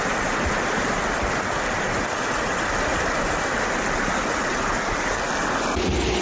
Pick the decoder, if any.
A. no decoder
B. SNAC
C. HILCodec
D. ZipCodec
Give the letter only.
A